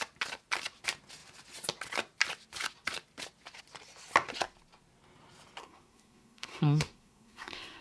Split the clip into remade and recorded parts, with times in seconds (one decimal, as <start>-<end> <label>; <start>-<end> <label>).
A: 0.0-5.6 recorded; 5.6-7.8 remade